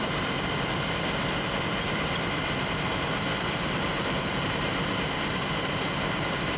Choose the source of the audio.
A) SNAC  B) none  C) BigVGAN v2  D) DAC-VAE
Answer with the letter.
C